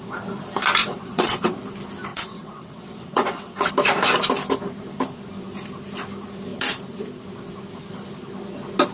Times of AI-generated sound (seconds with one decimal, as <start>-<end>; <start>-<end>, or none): 0.8-1.4; 2.1-3.7